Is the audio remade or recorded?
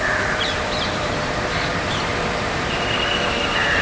remade